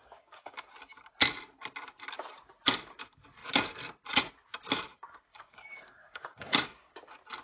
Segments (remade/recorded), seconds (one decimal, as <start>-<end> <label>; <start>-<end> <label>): 0.0-0.7 remade; 0.7-5.3 recorded; 5.3-7.0 remade; 7.0-7.4 recorded